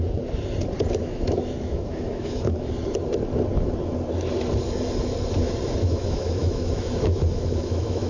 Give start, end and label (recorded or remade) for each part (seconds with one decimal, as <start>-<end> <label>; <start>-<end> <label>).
0.0-1.0 recorded; 1.0-2.7 remade; 2.7-5.8 recorded; 5.8-8.1 remade